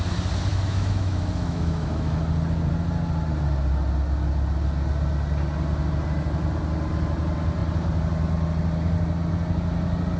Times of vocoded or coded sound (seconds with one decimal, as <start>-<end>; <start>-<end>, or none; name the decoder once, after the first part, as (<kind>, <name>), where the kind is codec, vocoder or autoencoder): 0.5-2.2 (autoencoder, DAC-VAE)